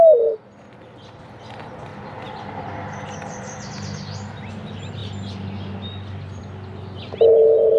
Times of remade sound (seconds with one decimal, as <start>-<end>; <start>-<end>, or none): none